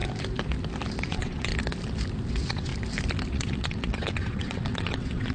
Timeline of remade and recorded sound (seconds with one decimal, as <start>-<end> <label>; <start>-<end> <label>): 0.0-1.0 recorded; 1.0-1.5 remade; 1.5-2.3 recorded; 2.3-2.7 remade; 2.7-3.3 recorded; 3.3-5.3 remade